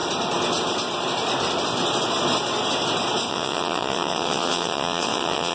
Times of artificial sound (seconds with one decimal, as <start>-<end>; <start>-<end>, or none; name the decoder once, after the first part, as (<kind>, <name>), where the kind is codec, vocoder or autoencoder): 3.3-5.5 (vocoder, WaveNeXt)